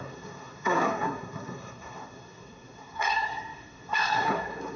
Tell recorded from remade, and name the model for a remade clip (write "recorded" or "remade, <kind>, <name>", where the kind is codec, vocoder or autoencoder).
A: remade, codec, SNAC